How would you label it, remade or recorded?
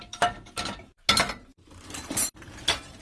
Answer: recorded